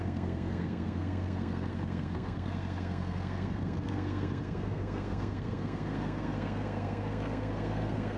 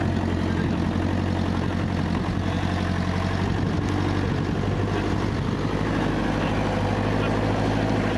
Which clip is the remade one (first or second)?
first